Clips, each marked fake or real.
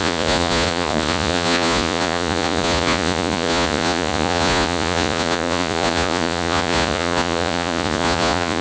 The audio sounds fake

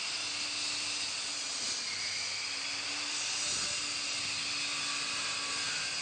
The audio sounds real